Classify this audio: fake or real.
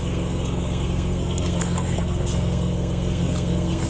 fake